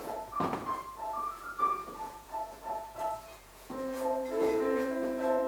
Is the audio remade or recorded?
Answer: remade